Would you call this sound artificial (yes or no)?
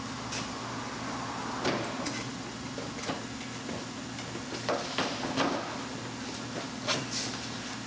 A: no